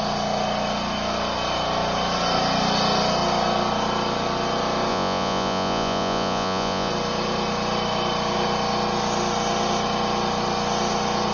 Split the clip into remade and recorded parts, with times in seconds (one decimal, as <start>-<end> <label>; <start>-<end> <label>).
0.0-4.9 recorded; 4.9-6.9 remade; 6.9-11.3 recorded